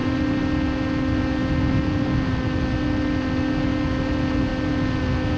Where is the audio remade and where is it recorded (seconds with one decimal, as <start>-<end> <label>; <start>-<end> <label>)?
0.0-5.4 recorded